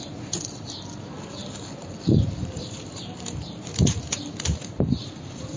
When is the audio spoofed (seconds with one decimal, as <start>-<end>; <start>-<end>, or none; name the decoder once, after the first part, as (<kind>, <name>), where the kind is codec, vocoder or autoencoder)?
1.4-4.0 (vocoder, BigVGAN v2); 5.0-5.6